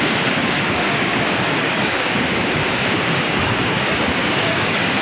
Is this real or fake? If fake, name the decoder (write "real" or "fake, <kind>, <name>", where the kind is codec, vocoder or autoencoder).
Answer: fake, codec, DAC